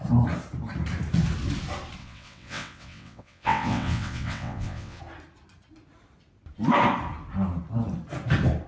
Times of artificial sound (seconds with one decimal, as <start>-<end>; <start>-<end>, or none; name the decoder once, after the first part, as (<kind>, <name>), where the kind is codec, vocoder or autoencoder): 2.0-5.0 (vocoder, WaveNeXt)